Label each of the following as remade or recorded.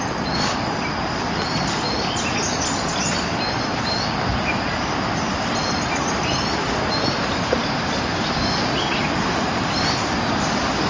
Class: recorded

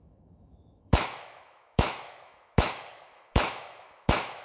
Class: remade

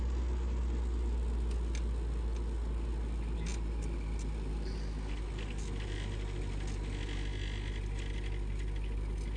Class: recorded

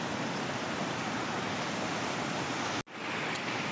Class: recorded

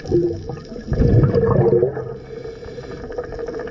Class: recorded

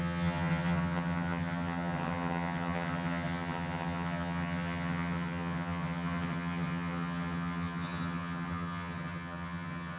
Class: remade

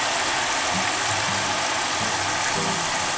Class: recorded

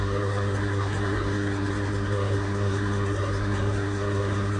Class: remade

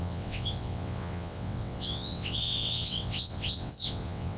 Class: remade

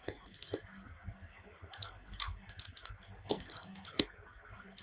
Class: remade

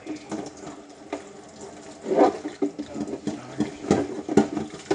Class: recorded